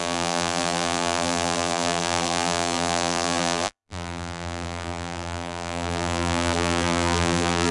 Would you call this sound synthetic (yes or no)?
yes